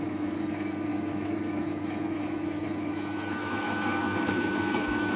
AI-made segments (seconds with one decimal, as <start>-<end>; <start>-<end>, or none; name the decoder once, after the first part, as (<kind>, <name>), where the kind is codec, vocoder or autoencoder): 0.0-5.2 (autoencoder, DAC-VAE)